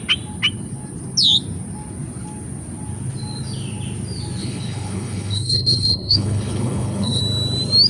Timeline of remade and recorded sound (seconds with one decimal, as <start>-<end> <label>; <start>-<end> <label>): 0.0-4.4 recorded; 4.4-7.2 remade; 7.2-7.9 recorded